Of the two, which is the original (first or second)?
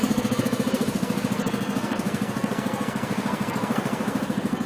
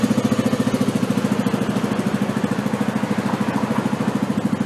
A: second